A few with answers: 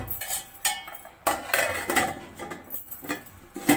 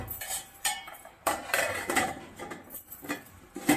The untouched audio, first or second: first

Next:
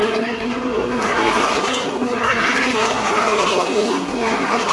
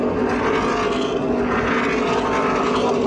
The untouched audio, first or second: second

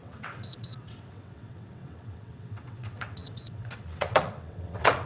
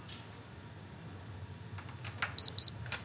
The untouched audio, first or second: second